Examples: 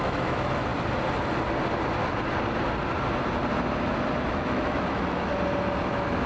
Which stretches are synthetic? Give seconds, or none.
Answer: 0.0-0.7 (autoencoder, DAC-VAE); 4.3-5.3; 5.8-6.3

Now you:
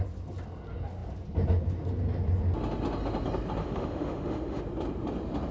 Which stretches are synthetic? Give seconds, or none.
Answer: 3.6-4.6 (autoencoder, DAC-VAE)